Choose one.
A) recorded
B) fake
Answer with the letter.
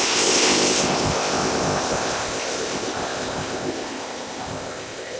B